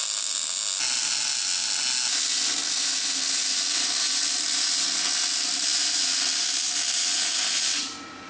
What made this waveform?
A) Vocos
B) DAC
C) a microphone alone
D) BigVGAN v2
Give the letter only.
C